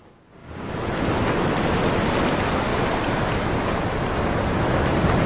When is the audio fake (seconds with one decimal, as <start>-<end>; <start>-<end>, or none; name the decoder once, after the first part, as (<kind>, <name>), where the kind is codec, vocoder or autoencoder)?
none